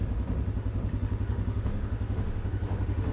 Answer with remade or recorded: remade